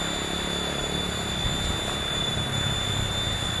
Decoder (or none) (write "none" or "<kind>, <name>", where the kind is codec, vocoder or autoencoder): none